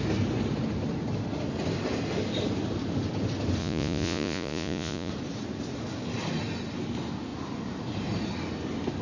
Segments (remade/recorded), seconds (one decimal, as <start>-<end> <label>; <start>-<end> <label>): 0.0-3.6 recorded; 3.6-5.1 remade; 5.1-9.0 recorded